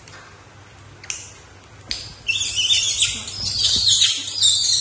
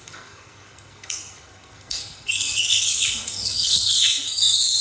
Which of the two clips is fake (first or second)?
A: second